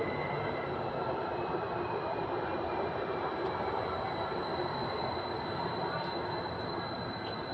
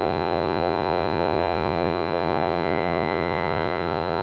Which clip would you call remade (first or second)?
second